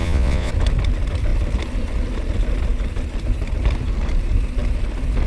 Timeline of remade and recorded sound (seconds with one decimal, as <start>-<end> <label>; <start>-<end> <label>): 0.0-0.5 remade; 0.5-5.3 recorded